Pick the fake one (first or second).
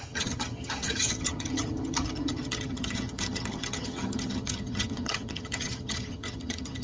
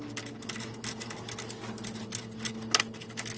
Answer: first